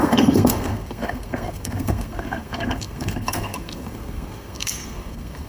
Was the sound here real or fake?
fake